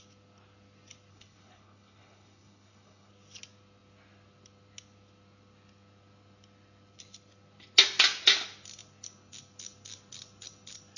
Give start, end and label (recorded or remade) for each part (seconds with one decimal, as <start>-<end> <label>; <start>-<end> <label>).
0.0-1.1 recorded; 1.1-3.1 remade; 3.1-11.0 recorded